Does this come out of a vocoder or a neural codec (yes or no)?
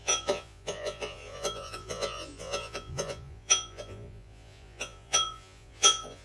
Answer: yes